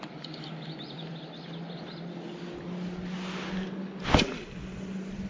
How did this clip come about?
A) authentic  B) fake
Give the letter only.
A